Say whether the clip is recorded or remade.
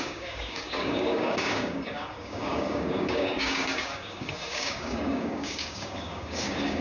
remade